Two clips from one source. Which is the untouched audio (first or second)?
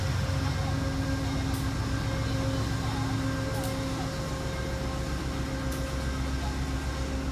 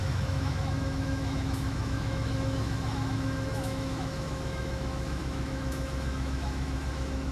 first